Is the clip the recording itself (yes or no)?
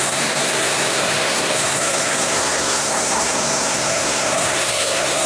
no